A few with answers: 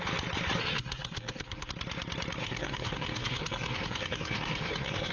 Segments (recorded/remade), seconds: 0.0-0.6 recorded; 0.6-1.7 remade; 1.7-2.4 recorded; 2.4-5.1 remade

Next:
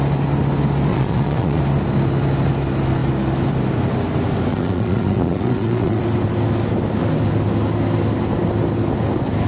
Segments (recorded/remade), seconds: 0.0-0.9 recorded; 0.9-1.6 remade; 1.6-4.5 recorded; 4.5-6.0 remade; 6.0-9.5 recorded